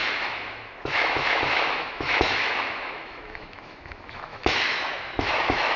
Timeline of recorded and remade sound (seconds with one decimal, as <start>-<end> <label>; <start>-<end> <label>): 0.0-5.8 remade